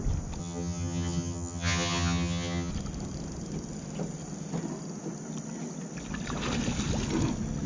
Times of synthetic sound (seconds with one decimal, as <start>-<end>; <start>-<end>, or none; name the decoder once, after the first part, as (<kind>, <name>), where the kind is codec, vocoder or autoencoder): 0.4-2.7 (vocoder, HiFi-GAN)